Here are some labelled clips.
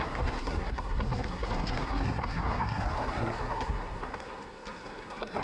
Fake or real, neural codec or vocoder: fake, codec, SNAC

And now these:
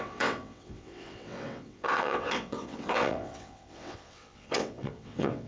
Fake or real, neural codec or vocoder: fake, vocoder, WaveNeXt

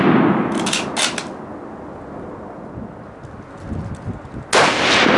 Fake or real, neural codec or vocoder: real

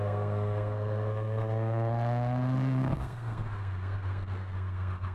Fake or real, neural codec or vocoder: fake, codec, SNAC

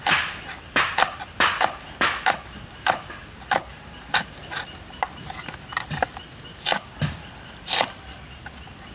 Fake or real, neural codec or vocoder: real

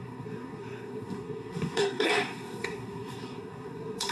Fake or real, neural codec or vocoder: fake, codec, SNAC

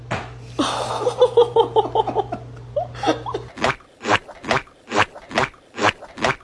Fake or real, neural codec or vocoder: real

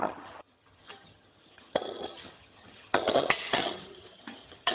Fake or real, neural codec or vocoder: fake, vocoder, HiFi-GAN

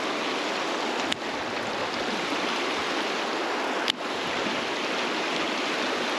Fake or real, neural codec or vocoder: real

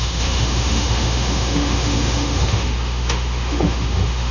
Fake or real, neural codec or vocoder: fake, autoencoder, DAC-VAE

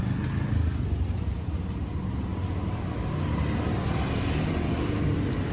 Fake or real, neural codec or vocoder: real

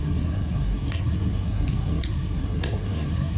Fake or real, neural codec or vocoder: fake, codec, SNAC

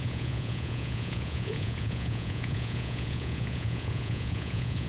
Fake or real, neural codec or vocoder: fake, vocoder, Vocos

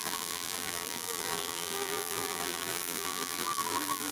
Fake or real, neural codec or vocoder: fake, vocoder, BigVGAN v2